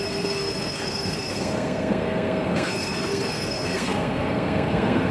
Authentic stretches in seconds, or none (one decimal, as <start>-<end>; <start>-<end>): none